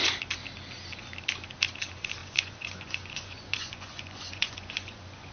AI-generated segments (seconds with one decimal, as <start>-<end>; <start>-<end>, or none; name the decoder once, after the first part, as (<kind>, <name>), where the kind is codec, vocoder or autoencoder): 2.2-5.3 (vocoder, Vocos)